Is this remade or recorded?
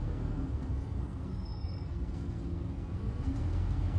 remade